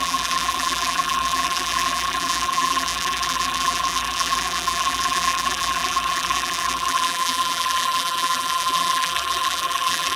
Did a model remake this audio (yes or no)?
yes